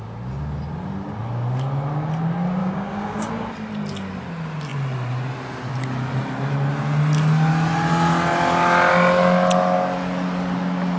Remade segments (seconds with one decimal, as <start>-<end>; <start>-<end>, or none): 2.6-3.3